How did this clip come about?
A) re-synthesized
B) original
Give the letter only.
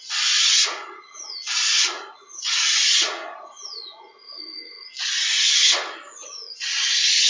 A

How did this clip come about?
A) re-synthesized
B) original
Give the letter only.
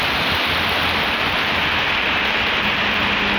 B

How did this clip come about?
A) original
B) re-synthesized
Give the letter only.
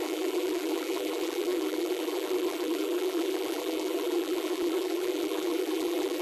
B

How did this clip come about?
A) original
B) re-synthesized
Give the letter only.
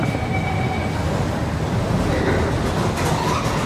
A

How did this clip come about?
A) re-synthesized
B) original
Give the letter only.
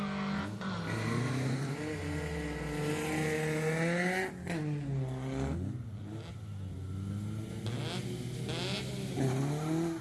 B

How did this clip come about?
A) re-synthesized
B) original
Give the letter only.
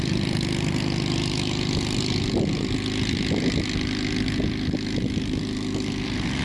B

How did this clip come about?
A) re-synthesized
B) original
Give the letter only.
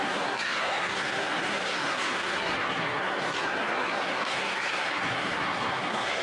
A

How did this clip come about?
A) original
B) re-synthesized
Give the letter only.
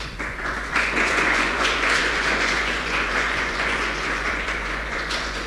B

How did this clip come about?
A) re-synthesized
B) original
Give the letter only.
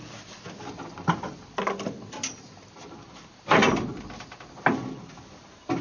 B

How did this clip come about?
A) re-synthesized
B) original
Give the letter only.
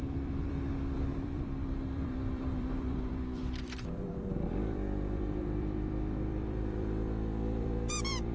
A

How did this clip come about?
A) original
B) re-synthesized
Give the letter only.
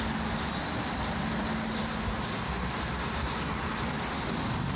B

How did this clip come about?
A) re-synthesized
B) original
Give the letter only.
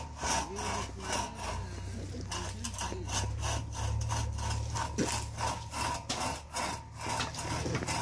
B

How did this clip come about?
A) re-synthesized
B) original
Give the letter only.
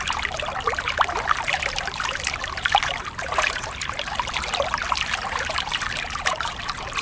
A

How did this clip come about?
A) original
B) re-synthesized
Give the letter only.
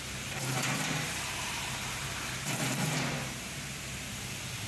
B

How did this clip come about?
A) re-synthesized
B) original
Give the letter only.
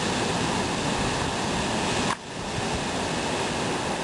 B